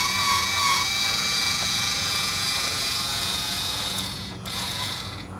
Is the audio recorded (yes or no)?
no